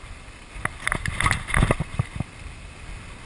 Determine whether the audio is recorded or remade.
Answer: recorded